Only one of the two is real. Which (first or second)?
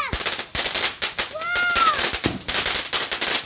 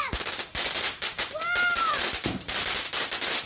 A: first